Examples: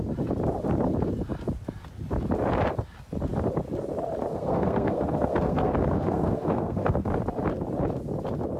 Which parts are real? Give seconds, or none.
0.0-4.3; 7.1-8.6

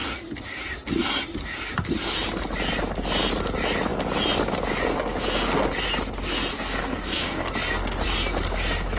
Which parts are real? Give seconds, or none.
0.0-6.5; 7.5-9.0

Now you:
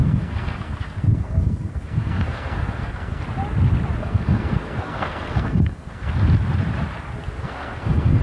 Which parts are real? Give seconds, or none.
3.2-4.0; 6.1-7.2

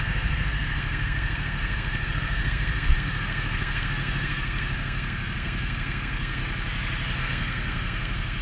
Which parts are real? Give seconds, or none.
6.4-7.2